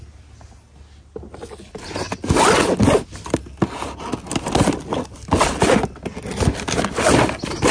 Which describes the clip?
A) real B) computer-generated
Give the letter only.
A